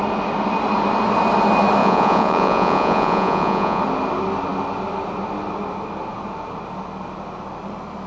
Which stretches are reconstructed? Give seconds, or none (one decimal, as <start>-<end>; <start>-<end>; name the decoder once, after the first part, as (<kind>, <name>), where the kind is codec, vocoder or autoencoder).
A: 1.8-3.8 (vocoder, Vocos)